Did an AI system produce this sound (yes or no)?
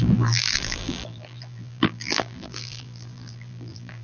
yes